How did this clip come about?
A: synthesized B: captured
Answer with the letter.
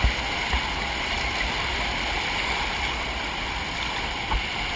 B